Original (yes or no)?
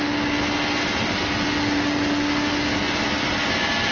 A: yes